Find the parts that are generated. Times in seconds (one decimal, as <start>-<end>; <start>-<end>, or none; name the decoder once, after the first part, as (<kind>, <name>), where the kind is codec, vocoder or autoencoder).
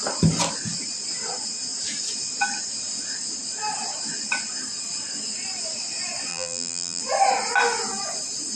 6.3-7.0 (vocoder, BigVGAN v2)